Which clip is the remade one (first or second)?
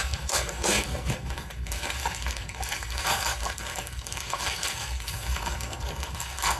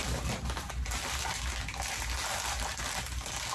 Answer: first